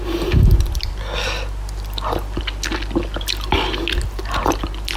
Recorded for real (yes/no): yes